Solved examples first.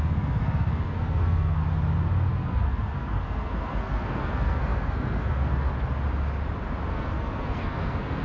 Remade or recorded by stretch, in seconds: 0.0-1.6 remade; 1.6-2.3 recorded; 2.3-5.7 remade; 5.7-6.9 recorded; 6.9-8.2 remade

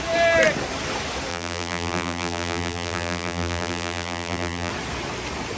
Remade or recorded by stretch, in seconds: 0.0-1.3 recorded; 1.3-4.7 remade; 4.7-5.6 recorded

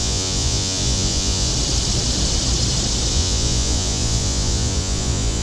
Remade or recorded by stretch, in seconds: 0.0-1.5 remade; 1.5-3.1 recorded; 3.1-5.4 remade

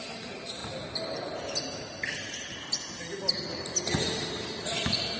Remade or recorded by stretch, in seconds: 0.0-5.2 recorded

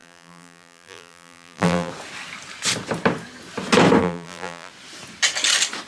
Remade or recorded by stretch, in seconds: 0.0-1.9 remade; 1.9-4.0 recorded; 4.0-4.7 remade; 4.7-5.9 recorded

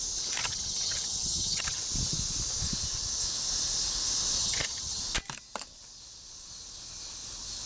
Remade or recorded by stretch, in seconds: 0.0-0.4 recorded; 0.4-1.8 remade; 1.8-4.4 recorded; 4.4-5.0 remade; 5.0-7.7 recorded

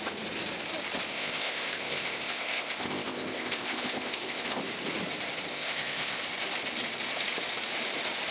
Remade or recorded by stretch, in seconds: 0.0-1.1 recorded; 1.1-4.6 remade; 4.6-5.5 recorded; 5.5-6.2 remade; 6.2-8.3 recorded